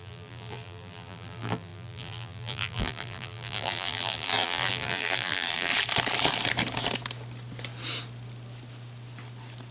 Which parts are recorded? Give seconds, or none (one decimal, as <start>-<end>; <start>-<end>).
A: 5.7-9.7